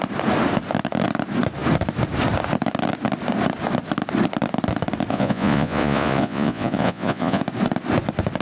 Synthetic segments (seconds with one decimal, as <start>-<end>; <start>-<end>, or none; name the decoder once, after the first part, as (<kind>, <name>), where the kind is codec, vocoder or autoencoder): 5.1-7.4 (vocoder, Vocos)